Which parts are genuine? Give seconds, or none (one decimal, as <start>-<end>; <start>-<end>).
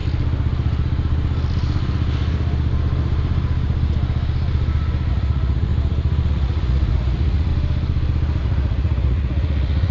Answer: 0.0-5.1; 5.7-6.3; 7.5-8.4